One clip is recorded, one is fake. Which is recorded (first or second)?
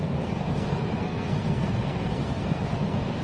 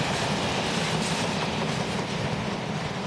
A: second